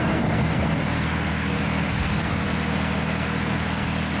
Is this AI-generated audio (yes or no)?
yes